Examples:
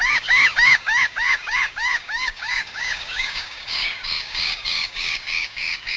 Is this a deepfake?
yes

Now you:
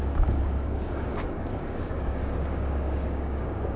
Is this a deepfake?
yes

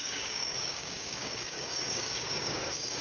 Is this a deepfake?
yes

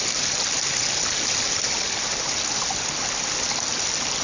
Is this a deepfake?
no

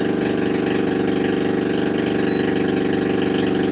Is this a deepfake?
no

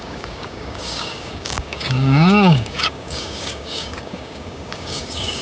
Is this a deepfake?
yes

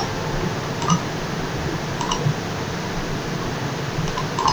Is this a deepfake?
no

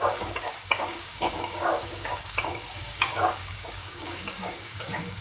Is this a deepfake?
yes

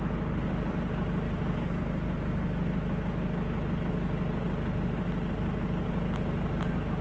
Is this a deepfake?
no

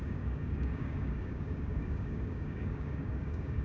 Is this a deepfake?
yes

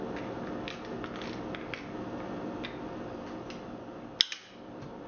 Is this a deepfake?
no